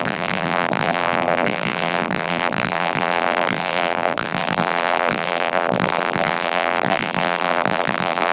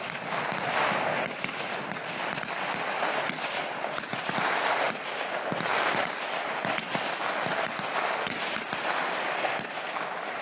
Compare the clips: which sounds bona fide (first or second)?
second